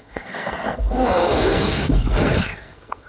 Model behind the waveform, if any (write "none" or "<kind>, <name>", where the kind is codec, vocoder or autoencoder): codec, SNAC